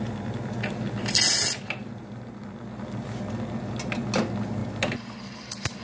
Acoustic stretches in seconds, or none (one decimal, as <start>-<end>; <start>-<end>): 0.0-5.8